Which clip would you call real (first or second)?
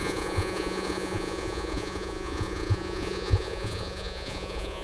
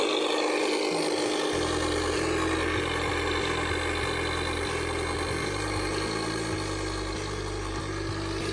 second